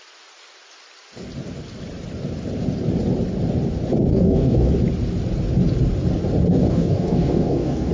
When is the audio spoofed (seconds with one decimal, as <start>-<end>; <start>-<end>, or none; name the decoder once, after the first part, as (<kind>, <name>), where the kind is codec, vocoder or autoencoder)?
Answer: 4.1-4.7 (codec, DAC); 6.5-7.9